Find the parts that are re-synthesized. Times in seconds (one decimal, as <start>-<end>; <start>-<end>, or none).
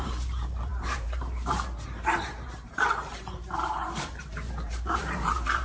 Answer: 0.0-5.6